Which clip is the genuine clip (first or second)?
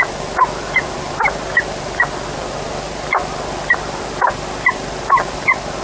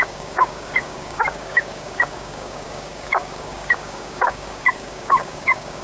first